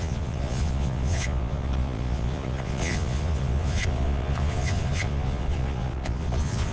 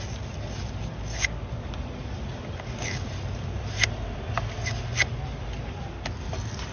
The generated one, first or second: first